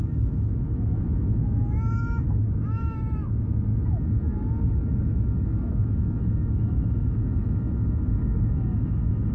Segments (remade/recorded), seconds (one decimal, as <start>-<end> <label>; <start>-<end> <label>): 0.0-3.7 remade; 3.7-5.0 recorded; 5.0-9.3 remade